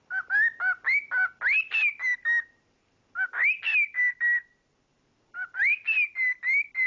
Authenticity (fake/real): real